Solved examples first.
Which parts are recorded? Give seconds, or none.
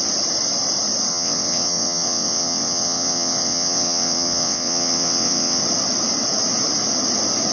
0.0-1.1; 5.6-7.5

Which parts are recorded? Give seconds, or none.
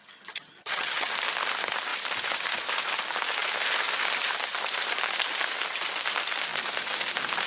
1.1-7.5